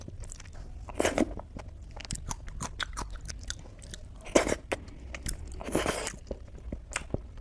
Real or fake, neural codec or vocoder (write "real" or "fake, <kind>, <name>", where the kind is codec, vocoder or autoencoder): real